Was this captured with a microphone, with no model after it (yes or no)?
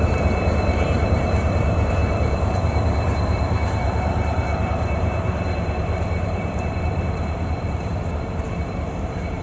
no